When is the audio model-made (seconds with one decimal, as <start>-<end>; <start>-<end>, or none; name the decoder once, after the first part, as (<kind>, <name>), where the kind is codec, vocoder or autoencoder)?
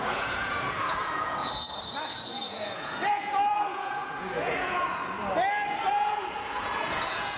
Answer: 0.0-5.0 (vocoder, Vocos); 5.9-7.4